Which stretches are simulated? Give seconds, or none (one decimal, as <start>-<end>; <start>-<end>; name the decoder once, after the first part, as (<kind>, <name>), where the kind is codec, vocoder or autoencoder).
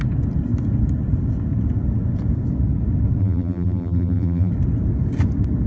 3.2-4.5 (vocoder, BigVGAN v2)